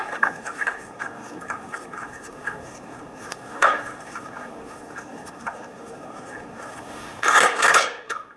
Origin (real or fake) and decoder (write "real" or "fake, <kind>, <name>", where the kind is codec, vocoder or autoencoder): fake, codec, SNAC